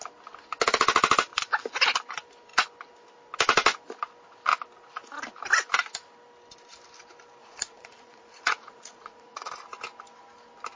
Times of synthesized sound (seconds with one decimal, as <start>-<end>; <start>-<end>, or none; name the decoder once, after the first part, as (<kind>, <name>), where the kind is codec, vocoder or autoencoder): 7.4-9.5 (vocoder, Vocos)